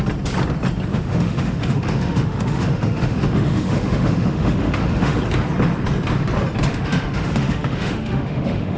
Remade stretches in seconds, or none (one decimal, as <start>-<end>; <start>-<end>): 0.9-5.2; 6.7-8.8